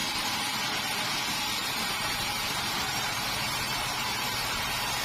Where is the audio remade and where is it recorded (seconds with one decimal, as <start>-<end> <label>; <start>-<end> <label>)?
0.0-0.6 remade; 0.6-1.6 recorded; 1.6-4.6 remade; 4.6-5.0 recorded